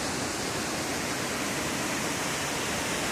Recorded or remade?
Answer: remade